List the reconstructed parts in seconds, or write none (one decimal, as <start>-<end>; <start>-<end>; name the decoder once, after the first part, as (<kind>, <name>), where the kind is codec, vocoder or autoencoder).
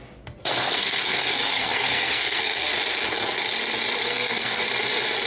0.4-2.7 (codec, SNAC); 4.0-4.6